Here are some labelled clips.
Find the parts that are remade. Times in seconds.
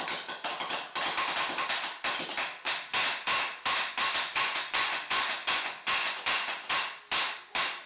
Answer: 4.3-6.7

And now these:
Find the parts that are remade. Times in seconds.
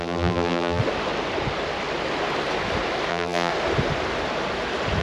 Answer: 0.0-0.8; 3.1-3.5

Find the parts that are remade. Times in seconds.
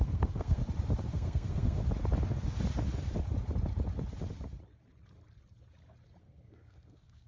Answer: 0.0-0.6; 1.1-1.8; 6.2-7.3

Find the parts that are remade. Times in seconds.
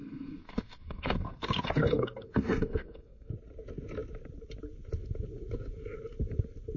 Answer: 0.0-3.3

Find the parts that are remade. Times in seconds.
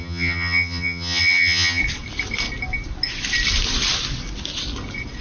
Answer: 0.0-1.8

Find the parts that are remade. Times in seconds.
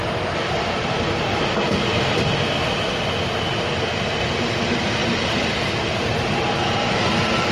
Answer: 5.0-7.5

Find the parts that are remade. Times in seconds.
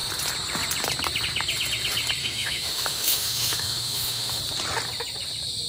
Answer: 2.2-4.4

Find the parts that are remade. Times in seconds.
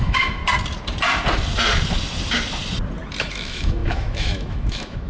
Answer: 0.0-0.4; 3.2-5.1